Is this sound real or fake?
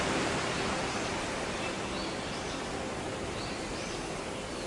real